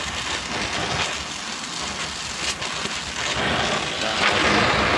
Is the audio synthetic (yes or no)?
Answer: no